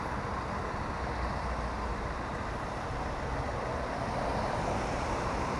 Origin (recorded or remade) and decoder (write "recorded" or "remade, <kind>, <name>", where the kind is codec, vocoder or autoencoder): recorded